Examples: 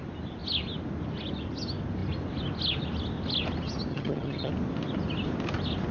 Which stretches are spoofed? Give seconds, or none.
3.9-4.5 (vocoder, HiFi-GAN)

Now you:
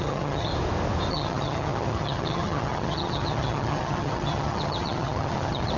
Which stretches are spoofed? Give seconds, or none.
0.0-0.5 (vocoder, HiFi-GAN); 1.1-5.8

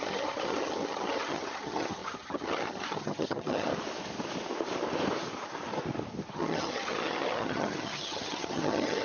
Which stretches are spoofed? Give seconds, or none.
0.0-3.7 (vocoder, HiFi-GAN); 6.3-9.0